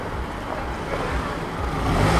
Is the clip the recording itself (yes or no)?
yes